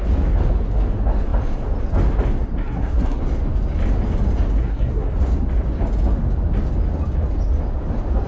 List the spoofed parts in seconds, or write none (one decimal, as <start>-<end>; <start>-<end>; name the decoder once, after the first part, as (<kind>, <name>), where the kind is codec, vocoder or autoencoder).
2.6-3.2 (codec, SNAC); 4.6-5.1